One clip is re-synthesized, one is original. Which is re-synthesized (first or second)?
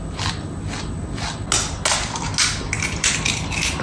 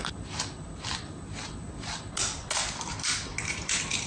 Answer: second